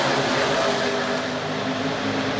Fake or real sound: real